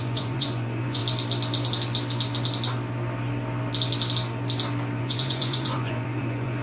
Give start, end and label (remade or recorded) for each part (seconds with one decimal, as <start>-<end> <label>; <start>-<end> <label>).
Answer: 0.0-1.0 remade; 1.0-5.0 recorded; 5.0-6.6 remade